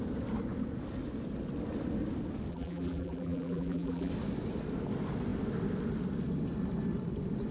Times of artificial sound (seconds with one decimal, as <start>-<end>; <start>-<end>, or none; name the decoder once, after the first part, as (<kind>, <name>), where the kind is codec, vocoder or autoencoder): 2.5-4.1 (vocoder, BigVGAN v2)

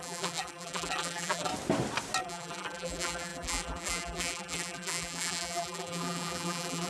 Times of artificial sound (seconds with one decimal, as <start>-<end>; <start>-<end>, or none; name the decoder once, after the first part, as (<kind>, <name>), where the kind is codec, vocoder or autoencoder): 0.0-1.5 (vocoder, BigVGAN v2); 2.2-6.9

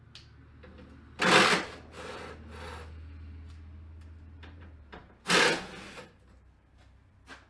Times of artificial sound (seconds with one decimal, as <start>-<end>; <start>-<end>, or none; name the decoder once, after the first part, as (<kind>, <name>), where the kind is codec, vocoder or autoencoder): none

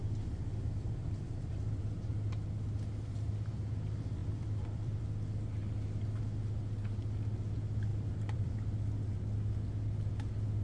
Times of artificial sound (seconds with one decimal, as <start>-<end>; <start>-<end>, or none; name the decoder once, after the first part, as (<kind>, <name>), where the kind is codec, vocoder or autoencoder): 0.0-2.1 (vocoder, BigVGAN v2); 4.2-5.0; 7.9-8.5

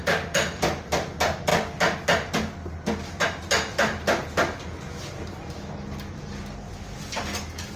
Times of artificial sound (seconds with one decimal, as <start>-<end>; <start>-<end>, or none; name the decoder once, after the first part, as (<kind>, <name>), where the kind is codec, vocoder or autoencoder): 0.0-1.5 (vocoder, BigVGAN v2); 4.6-7.8

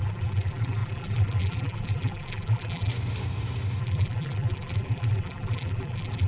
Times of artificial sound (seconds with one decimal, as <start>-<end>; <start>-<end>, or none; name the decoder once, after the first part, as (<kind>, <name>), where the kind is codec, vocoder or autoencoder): 0.0-2.9 (vocoder, BigVGAN v2); 3.8-6.3

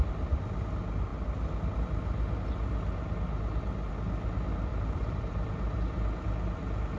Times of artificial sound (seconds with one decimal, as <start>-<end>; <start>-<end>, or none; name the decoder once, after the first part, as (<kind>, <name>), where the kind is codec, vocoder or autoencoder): 4.7-5.5 (vocoder, BigVGAN v2)